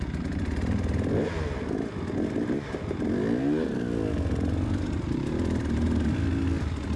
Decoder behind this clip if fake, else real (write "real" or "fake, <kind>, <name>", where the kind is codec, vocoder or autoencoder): real